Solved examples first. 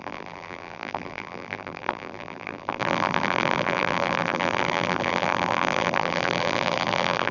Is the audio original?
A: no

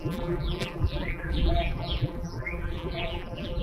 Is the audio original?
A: no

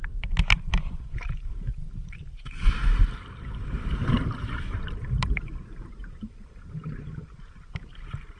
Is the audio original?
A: no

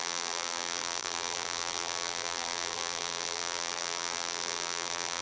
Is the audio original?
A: no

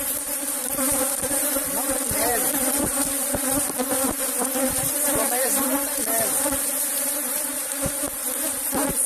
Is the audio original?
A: no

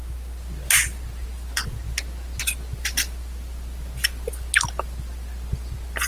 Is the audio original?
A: yes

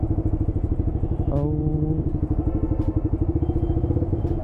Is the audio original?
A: yes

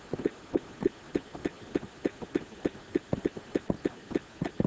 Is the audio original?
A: yes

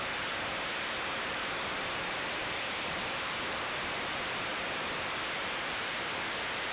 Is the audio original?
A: no